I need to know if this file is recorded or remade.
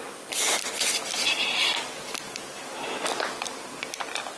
recorded